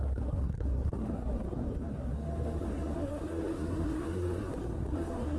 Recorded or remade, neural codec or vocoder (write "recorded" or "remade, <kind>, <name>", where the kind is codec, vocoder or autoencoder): remade, codec, SNAC